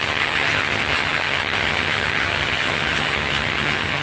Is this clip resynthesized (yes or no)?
yes